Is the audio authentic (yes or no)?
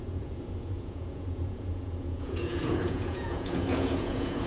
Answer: no